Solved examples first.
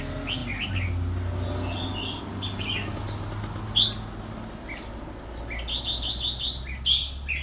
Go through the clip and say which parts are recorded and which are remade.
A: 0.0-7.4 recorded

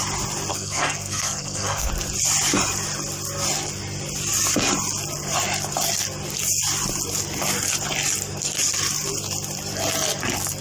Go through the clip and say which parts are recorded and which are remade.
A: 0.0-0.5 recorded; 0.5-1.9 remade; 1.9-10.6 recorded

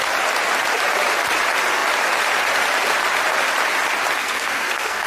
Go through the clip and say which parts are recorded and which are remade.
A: 0.0-4.2 recorded; 4.2-5.1 remade

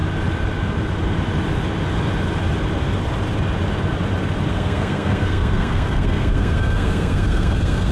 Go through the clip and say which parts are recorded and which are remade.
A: 0.0-4.5 recorded; 4.5-7.9 remade

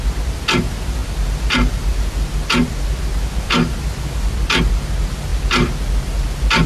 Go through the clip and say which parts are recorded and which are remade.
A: 0.0-6.7 recorded

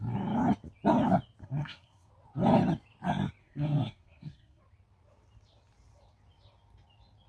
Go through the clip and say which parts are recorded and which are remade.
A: 0.0-1.4 recorded; 1.4-2.1 remade; 2.1-3.4 recorded; 3.4-4.6 remade; 4.6-7.3 recorded

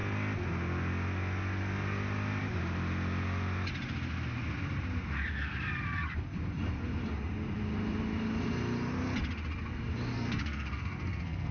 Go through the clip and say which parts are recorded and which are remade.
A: 0.0-10.1 recorded; 10.1-11.5 remade

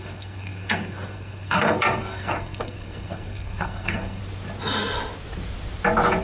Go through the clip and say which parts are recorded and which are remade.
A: 0.0-4.2 remade; 4.2-6.2 recorded